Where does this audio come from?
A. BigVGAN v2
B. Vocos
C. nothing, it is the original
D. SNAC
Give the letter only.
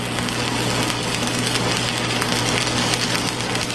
C